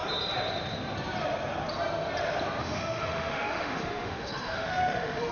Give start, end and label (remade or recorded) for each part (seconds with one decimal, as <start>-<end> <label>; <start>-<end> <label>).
0.0-2.6 recorded; 2.6-5.3 remade